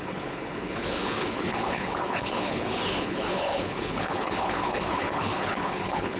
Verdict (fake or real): fake